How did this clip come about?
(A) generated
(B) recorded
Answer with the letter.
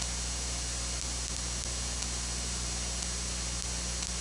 B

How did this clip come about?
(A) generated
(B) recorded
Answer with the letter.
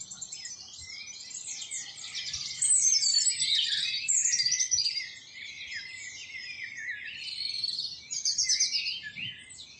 A